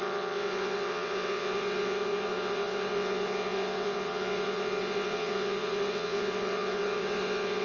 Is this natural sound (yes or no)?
no